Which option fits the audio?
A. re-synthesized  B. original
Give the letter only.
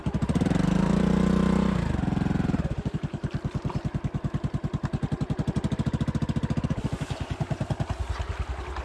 A